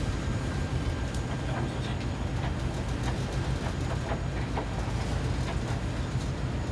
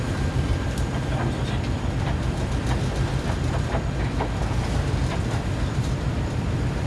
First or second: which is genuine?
first